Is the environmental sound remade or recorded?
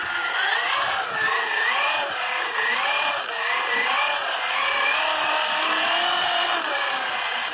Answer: recorded